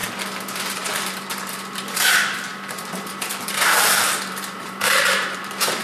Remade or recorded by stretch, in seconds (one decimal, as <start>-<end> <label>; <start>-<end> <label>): 0.0-0.6 recorded; 0.6-5.8 remade